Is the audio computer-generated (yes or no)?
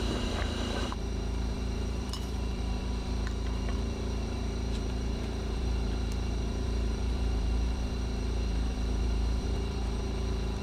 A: yes